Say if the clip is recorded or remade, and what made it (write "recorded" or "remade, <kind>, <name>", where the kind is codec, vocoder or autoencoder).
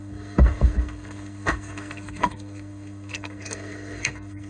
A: remade, codec, SNAC